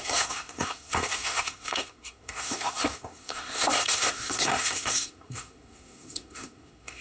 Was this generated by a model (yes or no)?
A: yes